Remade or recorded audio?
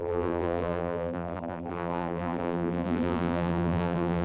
remade